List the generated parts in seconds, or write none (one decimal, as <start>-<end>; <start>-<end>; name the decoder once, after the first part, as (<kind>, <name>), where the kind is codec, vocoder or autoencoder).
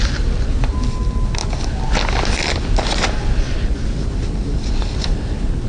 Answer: none